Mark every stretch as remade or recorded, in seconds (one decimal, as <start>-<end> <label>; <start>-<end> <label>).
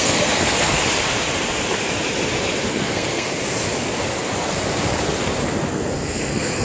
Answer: 0.0-0.8 remade; 0.8-2.7 recorded; 2.7-3.3 remade; 3.3-5.7 recorded; 5.7-6.6 remade